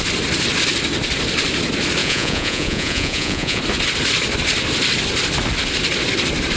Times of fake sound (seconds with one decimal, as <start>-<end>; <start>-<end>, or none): 2.0-3.6